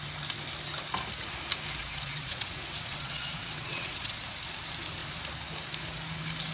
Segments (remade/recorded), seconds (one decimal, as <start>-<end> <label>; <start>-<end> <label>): 0.0-1.8 recorded; 1.8-4.2 remade; 4.2-6.5 recorded